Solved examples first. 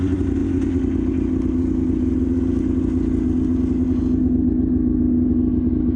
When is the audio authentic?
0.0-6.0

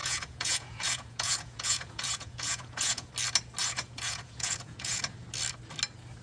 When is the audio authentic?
3.1-3.6; 5.0-6.2

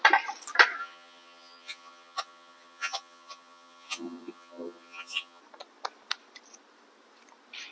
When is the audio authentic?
0.0-0.8; 5.4-7.7

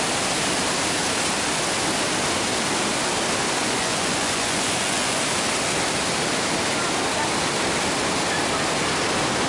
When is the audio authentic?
0.0-3.6; 5.2-9.5

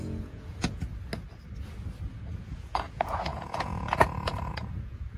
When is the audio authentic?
0.9-2.1

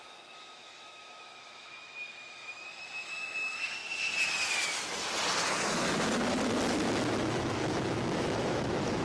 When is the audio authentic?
3.8-7.2

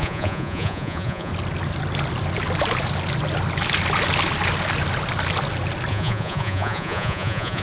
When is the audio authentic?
1.3-5.9

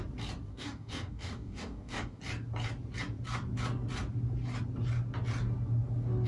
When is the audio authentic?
0.0-0.5; 2.2-6.3